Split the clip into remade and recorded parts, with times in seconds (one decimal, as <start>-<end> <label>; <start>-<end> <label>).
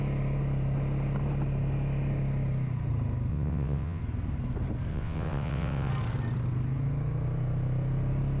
0.0-3.3 recorded; 3.3-4.0 remade; 4.0-4.9 recorded; 4.9-5.9 remade; 5.9-8.4 recorded